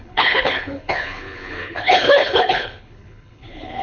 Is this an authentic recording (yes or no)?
no